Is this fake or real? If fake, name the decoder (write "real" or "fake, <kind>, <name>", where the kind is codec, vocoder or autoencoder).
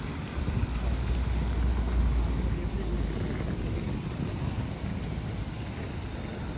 real